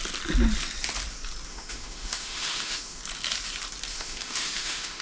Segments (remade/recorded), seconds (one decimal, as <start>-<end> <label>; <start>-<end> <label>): 0.0-1.5 recorded; 1.5-3.0 remade; 3.0-3.9 recorded; 3.9-5.0 remade